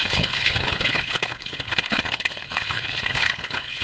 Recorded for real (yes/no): no